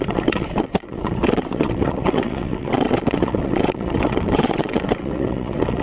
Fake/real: fake